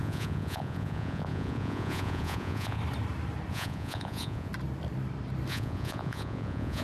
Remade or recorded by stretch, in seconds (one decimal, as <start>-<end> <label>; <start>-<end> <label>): 0.0-2.8 remade; 2.8-3.5 recorded; 3.5-4.5 remade; 4.5-5.5 recorded; 5.5-6.8 remade